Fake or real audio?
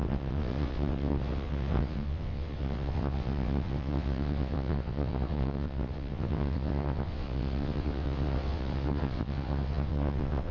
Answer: fake